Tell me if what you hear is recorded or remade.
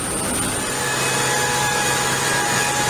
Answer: recorded